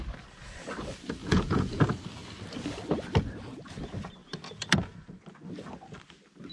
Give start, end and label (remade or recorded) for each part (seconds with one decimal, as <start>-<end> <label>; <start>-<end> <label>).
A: 0.0-1.2 recorded; 1.2-1.8 remade; 1.8-6.5 recorded